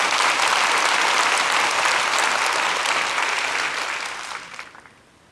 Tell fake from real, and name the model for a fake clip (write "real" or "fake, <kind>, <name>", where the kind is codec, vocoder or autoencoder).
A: real